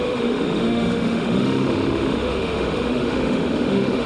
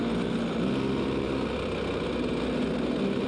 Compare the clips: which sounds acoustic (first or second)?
second